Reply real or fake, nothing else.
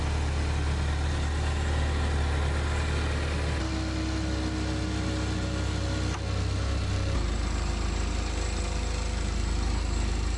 real